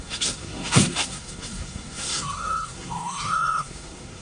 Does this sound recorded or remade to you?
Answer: remade